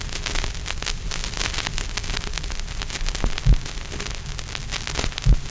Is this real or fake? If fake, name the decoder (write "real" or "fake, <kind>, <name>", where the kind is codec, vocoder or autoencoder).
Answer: real